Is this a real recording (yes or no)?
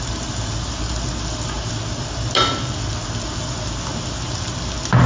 yes